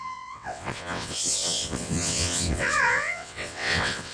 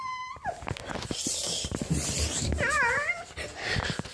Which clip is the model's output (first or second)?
first